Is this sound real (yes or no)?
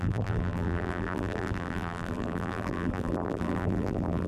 no